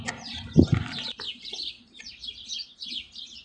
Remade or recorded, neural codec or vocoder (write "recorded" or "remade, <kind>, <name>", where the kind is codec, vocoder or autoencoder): recorded